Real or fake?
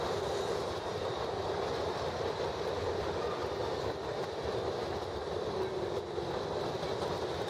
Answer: real